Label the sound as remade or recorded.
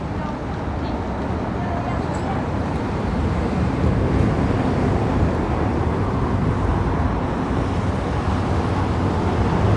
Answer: recorded